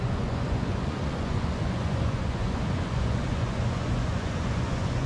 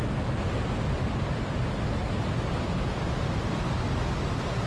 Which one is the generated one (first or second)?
first